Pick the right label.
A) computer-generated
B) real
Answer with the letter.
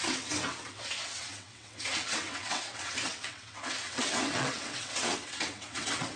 A